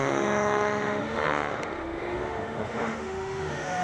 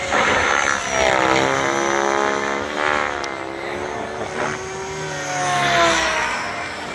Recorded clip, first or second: second